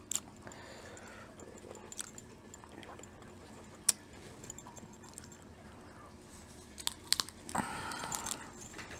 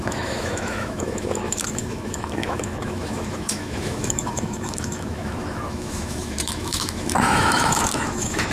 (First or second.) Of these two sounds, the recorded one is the first